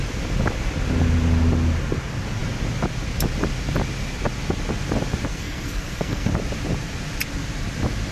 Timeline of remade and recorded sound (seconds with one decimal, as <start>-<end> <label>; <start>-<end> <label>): 0.0-5.3 recorded; 5.3-6.3 remade; 6.3-8.1 recorded